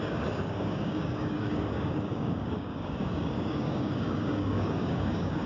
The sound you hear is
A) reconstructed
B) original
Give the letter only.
A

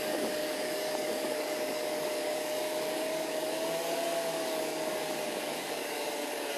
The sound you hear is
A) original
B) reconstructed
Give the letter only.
B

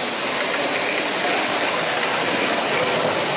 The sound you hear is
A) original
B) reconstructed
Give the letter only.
A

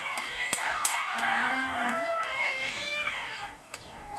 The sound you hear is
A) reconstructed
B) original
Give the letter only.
A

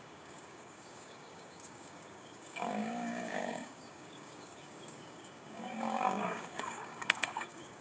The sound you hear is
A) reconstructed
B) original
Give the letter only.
A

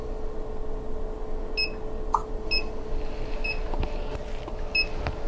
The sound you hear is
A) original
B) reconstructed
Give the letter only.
A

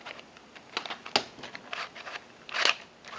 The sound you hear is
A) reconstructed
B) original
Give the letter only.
B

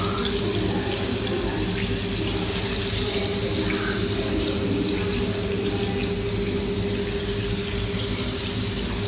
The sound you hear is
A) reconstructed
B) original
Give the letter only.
B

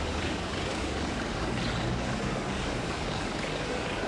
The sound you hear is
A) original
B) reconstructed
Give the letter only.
B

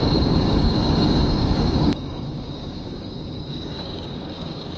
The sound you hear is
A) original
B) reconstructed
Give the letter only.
B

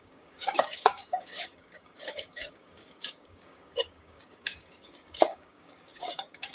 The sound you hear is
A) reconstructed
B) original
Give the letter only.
A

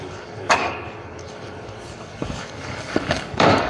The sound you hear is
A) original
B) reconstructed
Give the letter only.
B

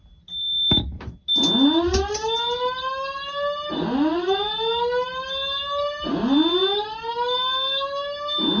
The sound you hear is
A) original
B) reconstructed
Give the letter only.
A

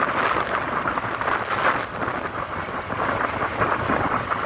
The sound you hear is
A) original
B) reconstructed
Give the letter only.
A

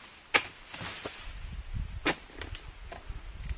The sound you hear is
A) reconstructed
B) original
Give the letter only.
B